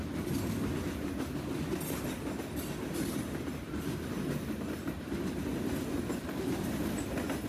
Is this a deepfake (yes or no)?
no